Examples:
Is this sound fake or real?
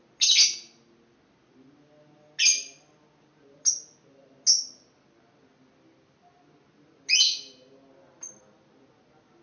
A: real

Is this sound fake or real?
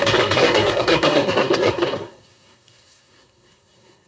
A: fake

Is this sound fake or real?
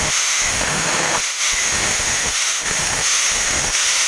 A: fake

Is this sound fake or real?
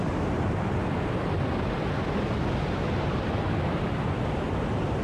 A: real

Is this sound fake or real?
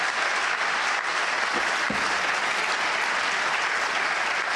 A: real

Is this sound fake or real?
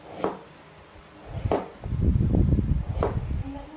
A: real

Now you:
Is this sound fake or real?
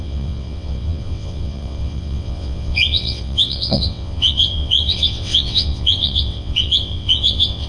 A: fake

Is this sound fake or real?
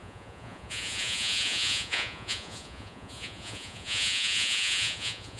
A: fake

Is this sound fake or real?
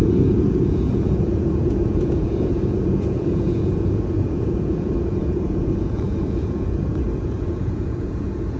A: fake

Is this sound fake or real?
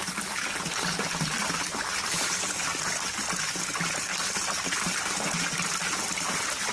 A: real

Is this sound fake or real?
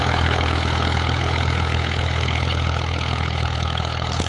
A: fake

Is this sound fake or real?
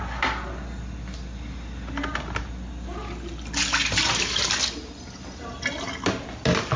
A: real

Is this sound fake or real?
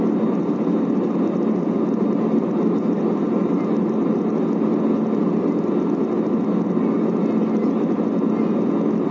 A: real